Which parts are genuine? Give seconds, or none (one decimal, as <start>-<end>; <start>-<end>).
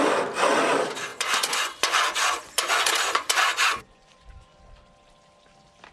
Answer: 0.0-1.1; 4.6-5.9